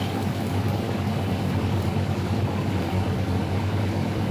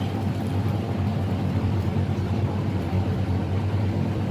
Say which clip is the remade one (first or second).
first